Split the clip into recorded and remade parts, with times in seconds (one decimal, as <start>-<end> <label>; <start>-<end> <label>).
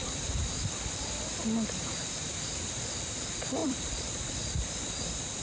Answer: 0.0-1.3 remade; 1.3-1.8 recorded; 1.8-2.3 remade; 2.3-3.6 recorded; 3.6-4.1 remade; 4.1-5.4 recorded